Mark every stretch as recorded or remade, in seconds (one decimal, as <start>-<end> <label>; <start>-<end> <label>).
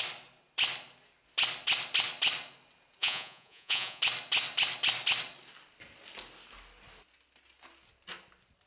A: 0.0-3.0 recorded; 3.0-4.0 remade; 4.0-8.7 recorded